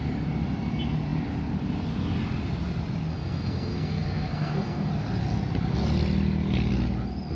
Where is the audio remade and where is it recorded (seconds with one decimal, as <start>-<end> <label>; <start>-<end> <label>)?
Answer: 0.0-3.1 recorded; 3.1-4.9 remade; 4.9-7.3 recorded